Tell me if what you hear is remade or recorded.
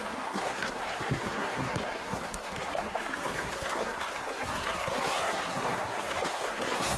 remade